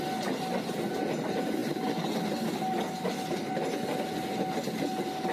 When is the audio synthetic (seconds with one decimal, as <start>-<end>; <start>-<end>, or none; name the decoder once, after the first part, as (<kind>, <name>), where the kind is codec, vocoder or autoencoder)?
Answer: none